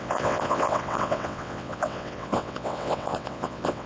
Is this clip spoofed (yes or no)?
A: yes